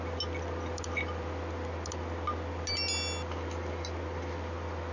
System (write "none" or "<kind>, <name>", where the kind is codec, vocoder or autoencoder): none